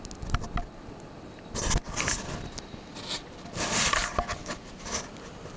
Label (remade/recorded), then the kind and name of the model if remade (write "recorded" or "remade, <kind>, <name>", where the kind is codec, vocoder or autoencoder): recorded